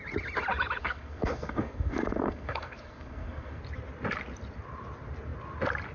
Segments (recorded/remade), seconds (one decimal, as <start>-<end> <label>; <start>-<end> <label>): 0.0-0.8 recorded; 0.8-3.6 remade; 3.6-5.9 recorded